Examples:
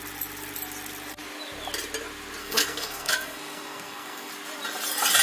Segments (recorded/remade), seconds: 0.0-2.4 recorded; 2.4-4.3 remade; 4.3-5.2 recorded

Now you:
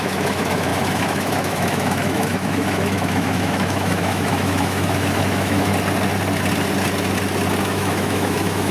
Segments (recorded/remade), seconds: 0.0-5.7 remade; 5.7-7.6 recorded; 7.6-8.7 remade

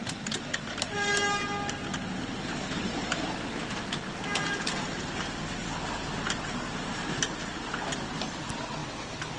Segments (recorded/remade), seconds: 0.0-9.4 recorded

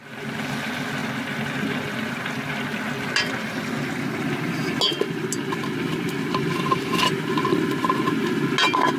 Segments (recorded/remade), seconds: 0.0-9.0 recorded